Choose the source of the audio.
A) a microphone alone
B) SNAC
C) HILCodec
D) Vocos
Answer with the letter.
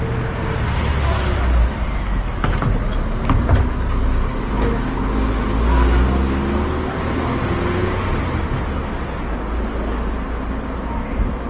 A